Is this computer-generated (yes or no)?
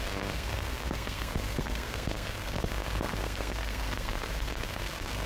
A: yes